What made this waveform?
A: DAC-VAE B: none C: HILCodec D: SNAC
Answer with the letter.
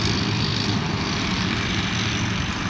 B